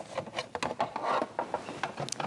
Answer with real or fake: real